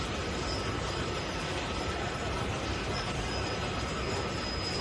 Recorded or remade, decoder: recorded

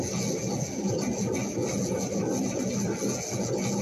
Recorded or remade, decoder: recorded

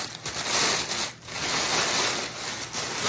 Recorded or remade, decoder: recorded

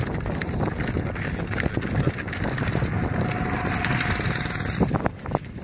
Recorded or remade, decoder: recorded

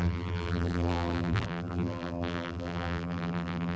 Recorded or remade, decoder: remade, vocoder, BigVGAN v2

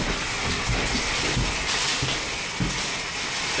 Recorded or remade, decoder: recorded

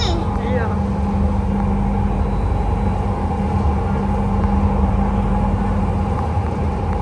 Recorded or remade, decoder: recorded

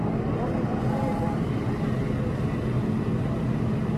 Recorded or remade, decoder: recorded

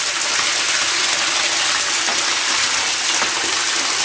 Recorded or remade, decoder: recorded